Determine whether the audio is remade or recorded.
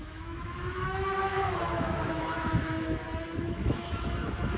remade